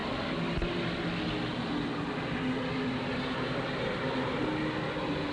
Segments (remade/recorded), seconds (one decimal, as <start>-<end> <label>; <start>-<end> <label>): 0.0-5.3 recorded